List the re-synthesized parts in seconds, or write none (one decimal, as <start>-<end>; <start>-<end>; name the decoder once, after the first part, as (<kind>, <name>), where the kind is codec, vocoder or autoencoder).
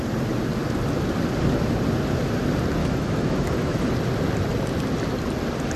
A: 2.8-3.9 (autoencoder, DAC-VAE)